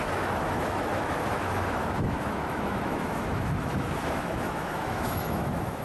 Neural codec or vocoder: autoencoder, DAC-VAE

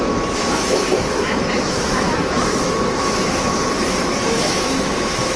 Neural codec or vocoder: autoencoder, DAC-VAE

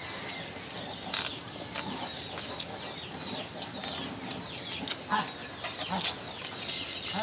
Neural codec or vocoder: none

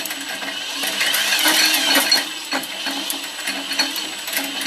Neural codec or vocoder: none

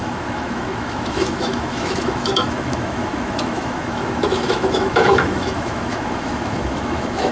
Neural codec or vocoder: autoencoder, DAC-VAE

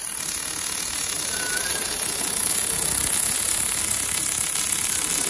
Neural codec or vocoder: none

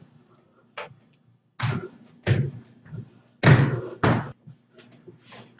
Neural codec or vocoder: none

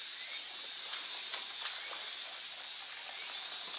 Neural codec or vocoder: none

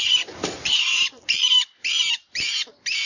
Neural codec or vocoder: none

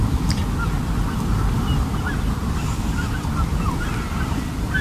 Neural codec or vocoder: none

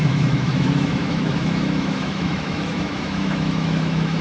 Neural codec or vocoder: autoencoder, DAC-VAE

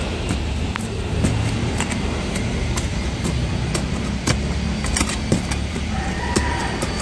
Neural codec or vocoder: none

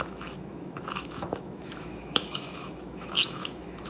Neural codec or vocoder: autoencoder, DAC-VAE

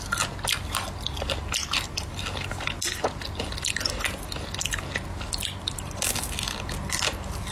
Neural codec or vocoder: none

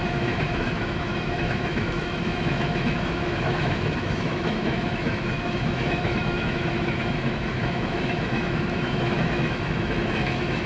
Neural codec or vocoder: autoencoder, DAC-VAE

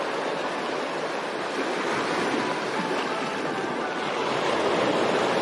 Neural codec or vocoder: none